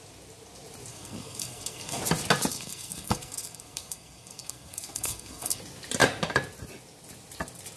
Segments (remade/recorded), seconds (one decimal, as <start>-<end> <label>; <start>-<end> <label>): 0.0-0.9 recorded; 0.9-2.0 remade; 2.0-2.5 recorded; 2.5-5.6 remade; 5.6-7.8 recorded